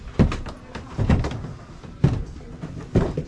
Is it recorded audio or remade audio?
recorded